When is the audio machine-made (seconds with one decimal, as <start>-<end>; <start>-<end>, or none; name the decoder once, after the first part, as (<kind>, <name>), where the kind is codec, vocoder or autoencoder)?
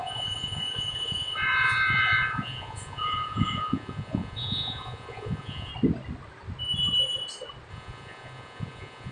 0.0-5.7 (vocoder, Vocos); 7.7-9.1